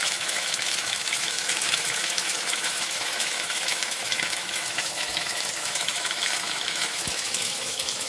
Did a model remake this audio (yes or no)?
yes